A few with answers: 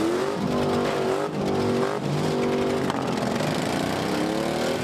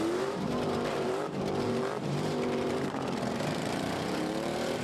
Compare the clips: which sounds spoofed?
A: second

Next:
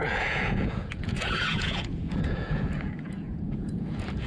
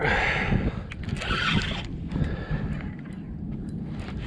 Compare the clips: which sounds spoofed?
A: first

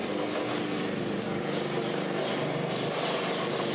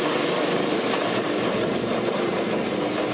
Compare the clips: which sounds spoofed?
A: second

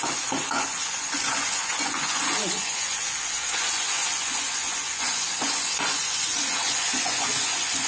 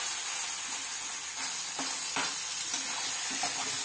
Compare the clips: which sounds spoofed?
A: first